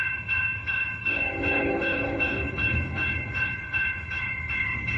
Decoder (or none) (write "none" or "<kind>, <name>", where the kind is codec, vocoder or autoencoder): codec, HILCodec